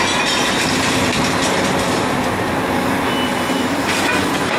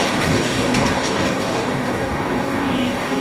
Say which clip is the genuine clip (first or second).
first